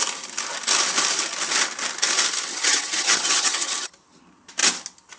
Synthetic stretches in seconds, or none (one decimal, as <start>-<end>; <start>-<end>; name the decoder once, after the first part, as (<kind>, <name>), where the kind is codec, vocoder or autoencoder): 2.5-3.9 (vocoder, HiFi-GAN)